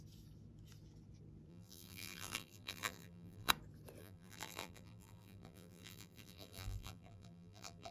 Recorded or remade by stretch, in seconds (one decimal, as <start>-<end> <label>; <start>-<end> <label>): 0.0-1.5 recorded; 1.5-3.5 remade; 3.5-4.0 recorded; 4.0-7.9 remade